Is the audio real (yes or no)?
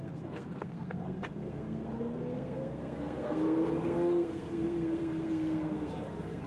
no